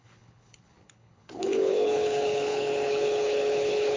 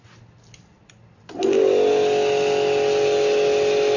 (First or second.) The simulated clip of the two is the first